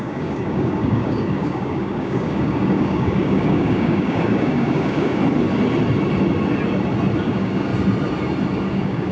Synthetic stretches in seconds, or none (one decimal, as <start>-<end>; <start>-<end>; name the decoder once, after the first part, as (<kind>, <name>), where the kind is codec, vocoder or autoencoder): 0.0-5.2 (codec, DAC); 7.2-7.7; 8.7-9.1